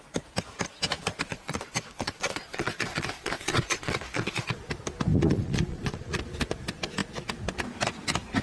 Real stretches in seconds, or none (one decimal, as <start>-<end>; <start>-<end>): 0.0-1.3; 4.6-5.1; 6.2-8.4